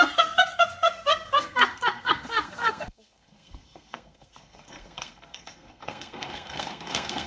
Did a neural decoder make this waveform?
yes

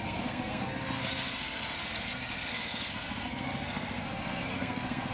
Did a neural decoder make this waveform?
yes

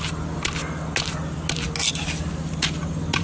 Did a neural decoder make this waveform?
no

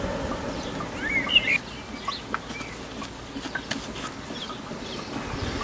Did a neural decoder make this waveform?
no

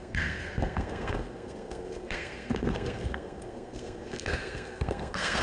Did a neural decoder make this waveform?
yes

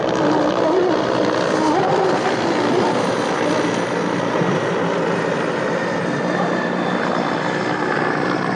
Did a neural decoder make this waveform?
no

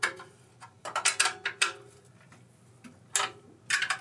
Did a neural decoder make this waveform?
no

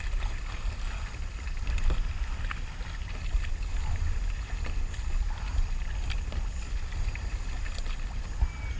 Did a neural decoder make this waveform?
no